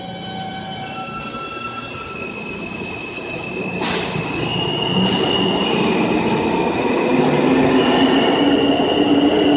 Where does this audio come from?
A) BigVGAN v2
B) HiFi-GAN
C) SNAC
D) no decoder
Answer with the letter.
D